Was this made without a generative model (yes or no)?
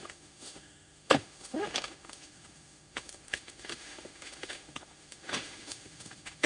no